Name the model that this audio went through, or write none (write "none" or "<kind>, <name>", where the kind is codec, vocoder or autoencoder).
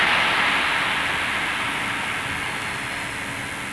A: none